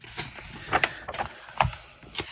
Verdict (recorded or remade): recorded